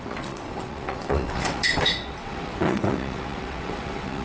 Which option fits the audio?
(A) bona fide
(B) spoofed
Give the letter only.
B